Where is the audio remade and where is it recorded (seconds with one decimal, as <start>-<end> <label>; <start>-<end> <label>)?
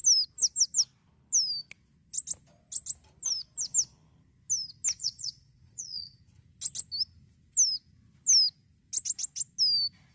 0.0-5.0 recorded; 5.0-6.2 remade; 6.2-10.1 recorded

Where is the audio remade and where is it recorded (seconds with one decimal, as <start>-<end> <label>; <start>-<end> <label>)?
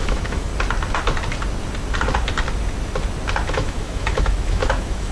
0.0-0.5 remade; 0.5-3.5 recorded; 3.5-5.1 remade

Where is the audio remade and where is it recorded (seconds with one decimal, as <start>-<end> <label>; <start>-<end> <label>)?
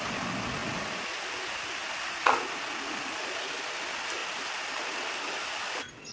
0.0-0.6 recorded; 0.6-1.2 remade; 1.2-4.2 recorded; 4.2-5.1 remade; 5.1-6.1 recorded